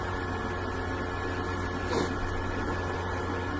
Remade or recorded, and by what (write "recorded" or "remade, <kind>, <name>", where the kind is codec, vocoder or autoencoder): recorded